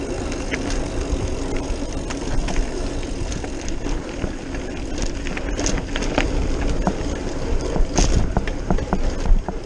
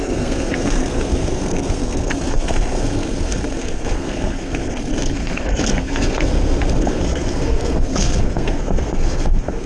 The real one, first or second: first